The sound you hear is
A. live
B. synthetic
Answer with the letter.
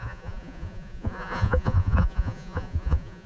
B